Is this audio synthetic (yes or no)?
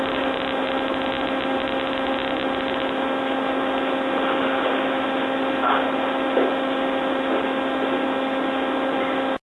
no